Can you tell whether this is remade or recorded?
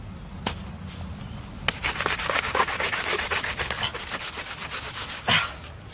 recorded